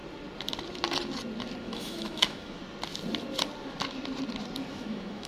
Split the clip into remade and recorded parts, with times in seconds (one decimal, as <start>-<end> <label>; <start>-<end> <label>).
0.0-1.6 recorded; 1.6-2.6 remade; 2.6-4.7 recorded; 4.7-5.3 remade

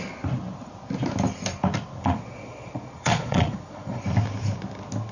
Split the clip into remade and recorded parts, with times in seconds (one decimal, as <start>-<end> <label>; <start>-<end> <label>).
0.0-2.0 recorded; 2.0-4.0 remade; 4.0-5.1 recorded

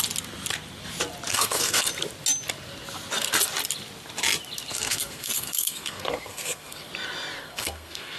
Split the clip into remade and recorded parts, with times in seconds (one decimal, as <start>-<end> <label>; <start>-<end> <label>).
0.0-1.3 recorded; 1.3-1.9 remade; 1.9-4.7 recorded; 4.7-6.9 remade; 6.9-7.4 recorded; 7.4-8.2 remade

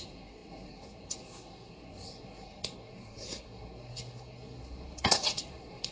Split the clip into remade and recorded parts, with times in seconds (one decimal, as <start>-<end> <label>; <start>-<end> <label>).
0.0-5.9 remade

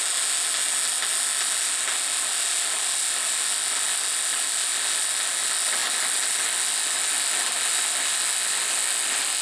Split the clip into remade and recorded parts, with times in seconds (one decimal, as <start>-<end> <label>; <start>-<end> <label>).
0.0-9.4 recorded

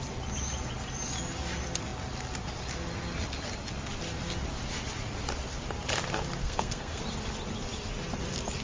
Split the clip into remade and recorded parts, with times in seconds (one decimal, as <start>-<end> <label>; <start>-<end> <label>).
0.0-6.4 recorded; 6.4-7.0 remade; 7.0-8.6 recorded

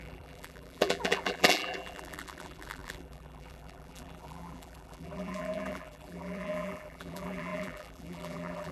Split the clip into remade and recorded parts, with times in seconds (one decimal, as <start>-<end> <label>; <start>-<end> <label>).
0.0-8.7 remade

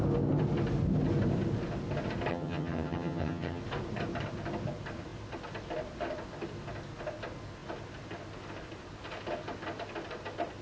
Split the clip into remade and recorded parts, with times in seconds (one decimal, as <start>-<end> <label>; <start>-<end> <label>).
0.0-2.3 recorded; 2.3-3.6 remade; 3.6-10.6 recorded